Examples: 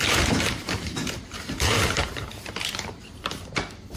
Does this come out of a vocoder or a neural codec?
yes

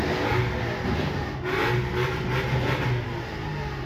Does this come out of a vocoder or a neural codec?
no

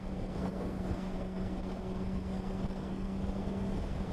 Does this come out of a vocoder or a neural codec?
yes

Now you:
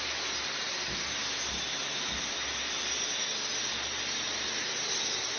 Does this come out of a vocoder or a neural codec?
no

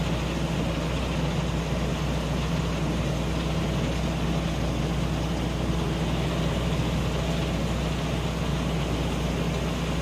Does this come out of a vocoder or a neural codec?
no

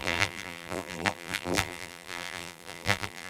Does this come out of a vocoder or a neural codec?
yes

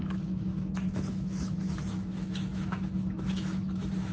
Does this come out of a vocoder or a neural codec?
yes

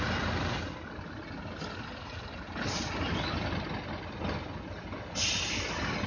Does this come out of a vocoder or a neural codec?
no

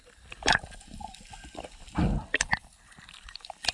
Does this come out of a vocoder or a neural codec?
no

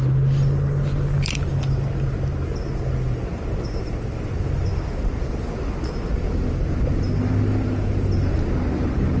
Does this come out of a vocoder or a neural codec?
no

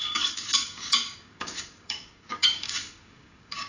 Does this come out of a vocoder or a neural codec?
yes